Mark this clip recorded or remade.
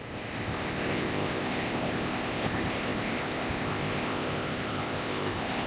remade